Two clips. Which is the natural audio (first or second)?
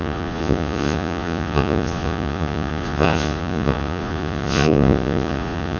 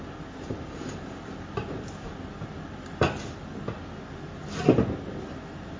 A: second